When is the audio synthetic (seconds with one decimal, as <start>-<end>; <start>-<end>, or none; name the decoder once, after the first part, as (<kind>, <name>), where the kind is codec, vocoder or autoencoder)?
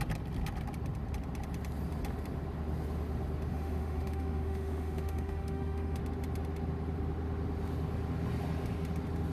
3.5-6.0 (autoencoder, DAC-VAE)